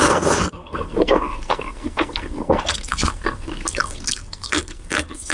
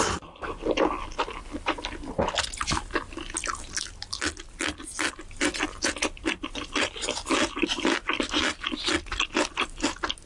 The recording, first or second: second